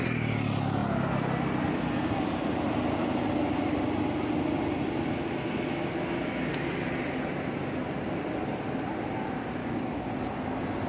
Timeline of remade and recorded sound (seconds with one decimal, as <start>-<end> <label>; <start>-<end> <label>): 0.0-9.6 recorded; 9.6-10.1 remade; 10.1-10.9 recorded